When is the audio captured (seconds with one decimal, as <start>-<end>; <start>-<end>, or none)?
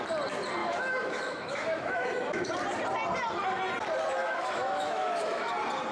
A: 0.0-0.6; 2.5-4.2; 5.5-5.9